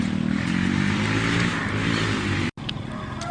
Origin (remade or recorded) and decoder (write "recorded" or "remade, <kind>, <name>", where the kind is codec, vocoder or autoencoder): recorded